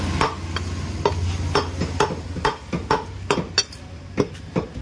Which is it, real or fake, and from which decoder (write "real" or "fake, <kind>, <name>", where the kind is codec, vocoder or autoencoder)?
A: real